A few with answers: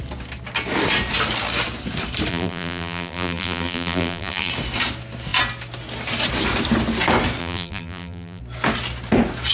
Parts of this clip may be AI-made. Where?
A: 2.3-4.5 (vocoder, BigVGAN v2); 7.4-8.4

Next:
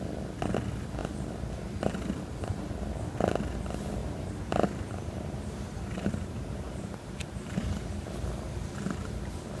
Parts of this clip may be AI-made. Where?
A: 4.0-7.9 (vocoder, BigVGAN v2)

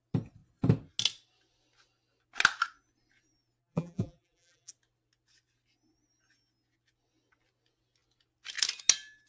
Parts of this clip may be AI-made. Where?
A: 3.6-4.7 (vocoder, BigVGAN v2)